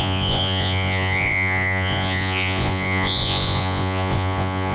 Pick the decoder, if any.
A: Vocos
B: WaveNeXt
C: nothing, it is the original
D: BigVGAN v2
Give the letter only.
A